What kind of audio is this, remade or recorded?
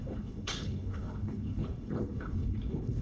remade